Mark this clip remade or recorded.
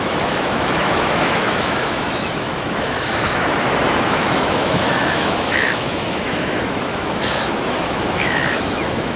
remade